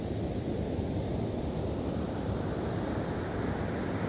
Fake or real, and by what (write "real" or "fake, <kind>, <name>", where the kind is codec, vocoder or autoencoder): fake, vocoder, BigVGAN v2